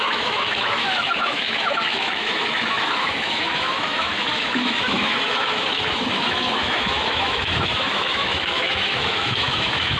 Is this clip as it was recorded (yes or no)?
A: no